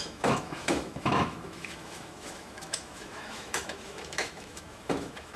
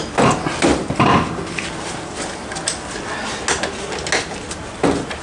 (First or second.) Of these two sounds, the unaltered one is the second